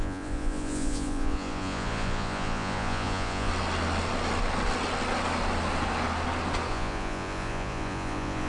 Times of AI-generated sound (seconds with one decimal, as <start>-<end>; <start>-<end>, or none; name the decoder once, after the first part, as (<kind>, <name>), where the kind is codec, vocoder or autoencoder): 0.0-3.5 (vocoder, Vocos); 6.7-8.5